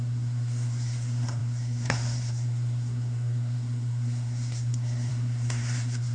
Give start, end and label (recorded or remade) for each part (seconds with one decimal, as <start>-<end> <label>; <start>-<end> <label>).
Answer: 0.0-6.1 remade